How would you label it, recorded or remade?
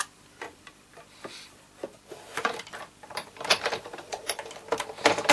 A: remade